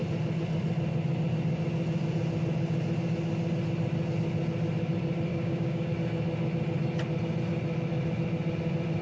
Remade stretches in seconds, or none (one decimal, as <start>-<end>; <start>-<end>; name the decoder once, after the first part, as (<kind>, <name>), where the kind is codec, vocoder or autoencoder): 5.3-5.9 (codec, DAC)